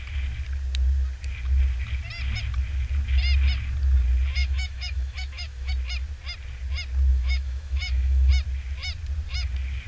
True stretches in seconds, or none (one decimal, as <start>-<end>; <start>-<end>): 0.0-4.4; 5.7-7.1; 8.3-9.9